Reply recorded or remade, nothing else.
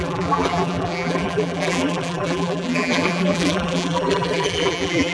remade